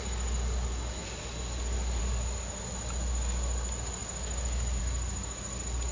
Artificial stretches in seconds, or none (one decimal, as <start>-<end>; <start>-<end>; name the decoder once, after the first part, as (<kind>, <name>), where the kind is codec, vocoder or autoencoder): none